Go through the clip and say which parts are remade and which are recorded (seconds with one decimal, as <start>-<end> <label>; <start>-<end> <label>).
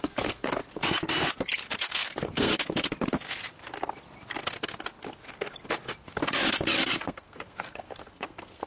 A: 0.0-0.6 remade; 0.6-1.8 recorded; 1.8-2.5 remade; 2.5-7.0 recorded; 7.0-8.7 remade